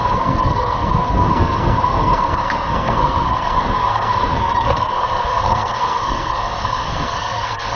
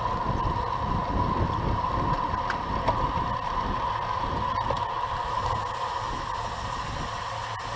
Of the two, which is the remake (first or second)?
first